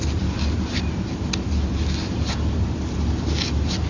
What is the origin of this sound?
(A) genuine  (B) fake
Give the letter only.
A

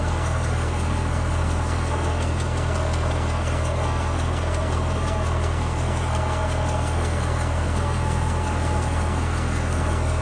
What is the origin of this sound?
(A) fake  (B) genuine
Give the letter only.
A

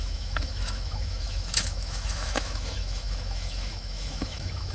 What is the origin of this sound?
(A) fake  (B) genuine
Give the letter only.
A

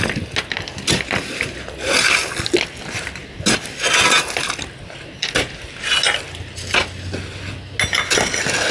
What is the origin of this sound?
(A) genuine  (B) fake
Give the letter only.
A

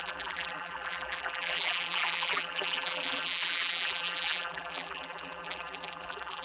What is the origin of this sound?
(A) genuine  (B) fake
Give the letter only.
B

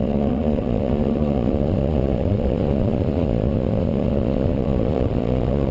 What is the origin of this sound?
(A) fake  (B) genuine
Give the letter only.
A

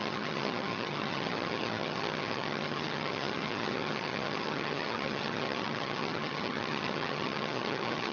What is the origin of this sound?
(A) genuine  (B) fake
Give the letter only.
B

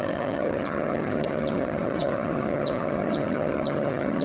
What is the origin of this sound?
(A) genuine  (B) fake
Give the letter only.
B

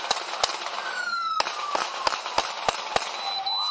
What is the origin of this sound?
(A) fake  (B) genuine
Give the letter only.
B